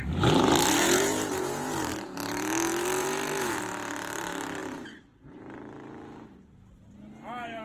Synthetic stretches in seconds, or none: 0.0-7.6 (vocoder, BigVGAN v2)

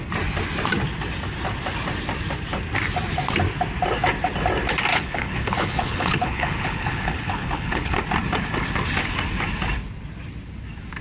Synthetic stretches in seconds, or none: 4.9-8.0 (codec, HILCodec)